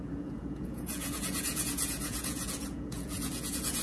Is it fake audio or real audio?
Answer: fake